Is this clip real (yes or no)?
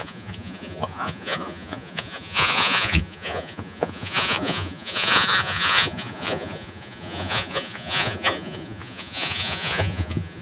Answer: no